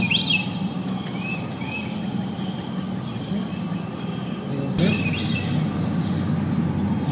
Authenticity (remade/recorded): recorded